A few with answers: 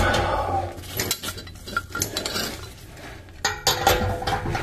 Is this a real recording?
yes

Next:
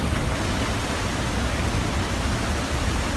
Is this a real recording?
yes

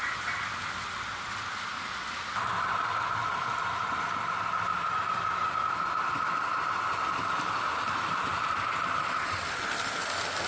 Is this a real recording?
yes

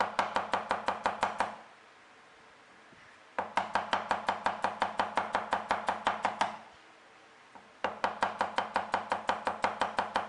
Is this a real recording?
yes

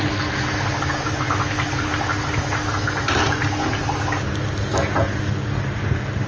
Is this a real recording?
yes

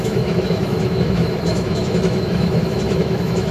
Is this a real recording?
no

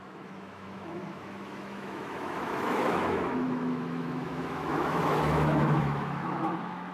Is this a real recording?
no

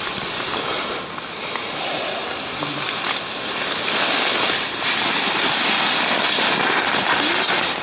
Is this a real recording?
yes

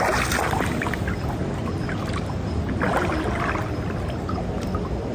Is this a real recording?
yes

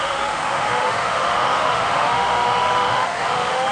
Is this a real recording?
no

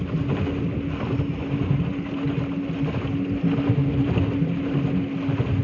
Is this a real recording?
yes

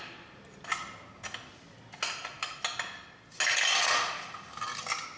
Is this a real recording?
yes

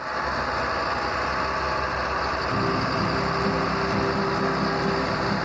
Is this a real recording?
yes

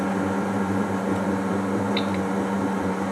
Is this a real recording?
no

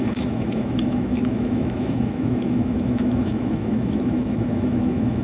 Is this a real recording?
no